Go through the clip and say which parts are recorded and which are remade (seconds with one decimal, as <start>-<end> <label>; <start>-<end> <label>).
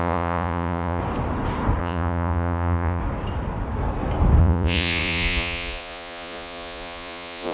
0.0-1.0 remade; 1.0-1.8 recorded; 1.8-3.0 remade; 3.0-4.4 recorded; 4.4-7.5 remade